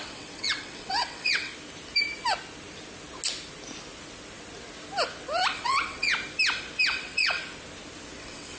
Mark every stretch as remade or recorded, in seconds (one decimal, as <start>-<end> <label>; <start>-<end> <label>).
0.0-1.5 remade; 1.5-5.5 recorded; 5.5-6.1 remade; 6.1-6.9 recorded; 6.9-7.4 remade; 7.4-8.2 recorded; 8.2-8.6 remade